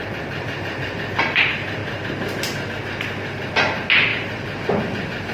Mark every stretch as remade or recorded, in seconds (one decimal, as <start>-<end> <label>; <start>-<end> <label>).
0.0-5.3 recorded